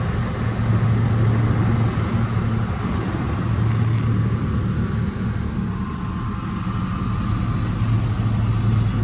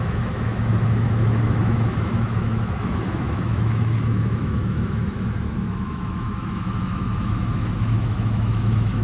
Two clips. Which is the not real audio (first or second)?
second